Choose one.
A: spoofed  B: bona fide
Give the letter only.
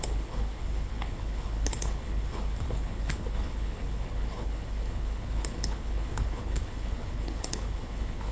A